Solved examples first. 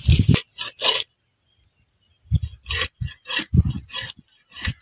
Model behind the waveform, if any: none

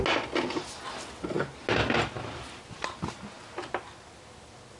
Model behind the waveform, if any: none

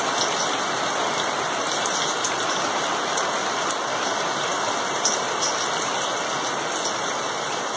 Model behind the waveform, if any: none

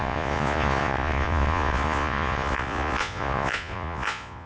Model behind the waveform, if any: vocoder, Vocos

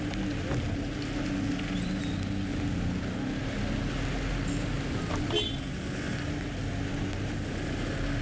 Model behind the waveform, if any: none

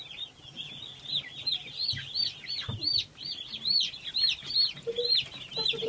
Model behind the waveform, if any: none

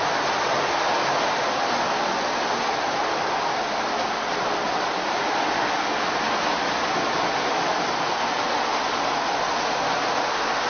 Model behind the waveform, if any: none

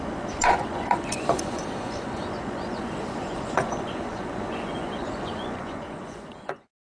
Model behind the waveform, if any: vocoder, Vocos